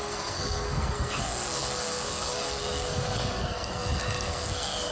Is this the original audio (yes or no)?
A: no